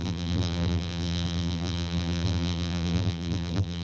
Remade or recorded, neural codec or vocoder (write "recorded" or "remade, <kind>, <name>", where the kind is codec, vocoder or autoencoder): remade, vocoder, BigVGAN v2